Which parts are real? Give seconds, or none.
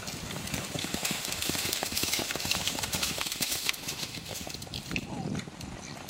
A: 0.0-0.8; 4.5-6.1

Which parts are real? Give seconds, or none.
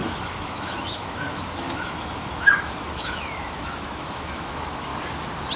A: 4.9-5.6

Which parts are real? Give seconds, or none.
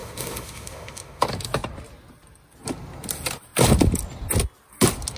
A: 1.2-5.2